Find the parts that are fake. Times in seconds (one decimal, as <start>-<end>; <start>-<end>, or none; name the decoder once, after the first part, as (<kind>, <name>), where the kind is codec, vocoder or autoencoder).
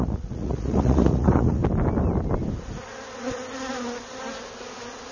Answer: 0.0-1.6 (vocoder, Vocos)